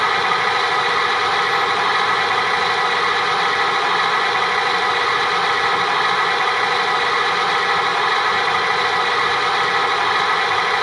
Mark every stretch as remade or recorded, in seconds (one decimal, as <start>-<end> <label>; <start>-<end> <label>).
0.0-7.9 recorded; 7.9-8.8 remade; 8.8-10.8 recorded